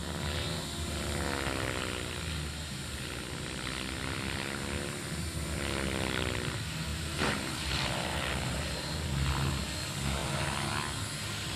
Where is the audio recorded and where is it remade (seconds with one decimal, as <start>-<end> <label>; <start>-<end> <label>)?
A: 0.0-6.9 recorded; 6.9-8.6 remade; 8.6-11.6 recorded